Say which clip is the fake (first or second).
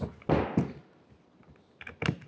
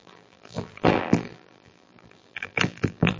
second